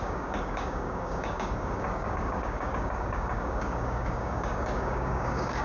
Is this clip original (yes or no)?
no